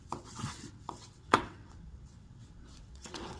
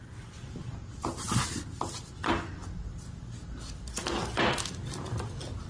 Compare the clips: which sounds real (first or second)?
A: second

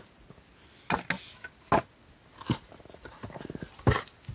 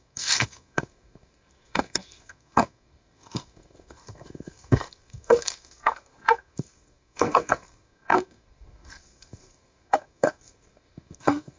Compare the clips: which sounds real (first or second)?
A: first